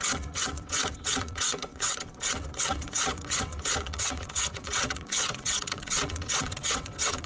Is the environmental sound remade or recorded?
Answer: remade